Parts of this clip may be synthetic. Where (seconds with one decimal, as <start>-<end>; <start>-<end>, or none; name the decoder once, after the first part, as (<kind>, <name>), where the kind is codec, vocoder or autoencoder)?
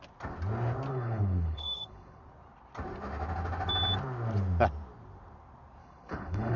0.9-2.2 (codec, HILCodec); 5.8-6.6